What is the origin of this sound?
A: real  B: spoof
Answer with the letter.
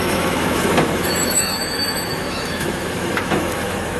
B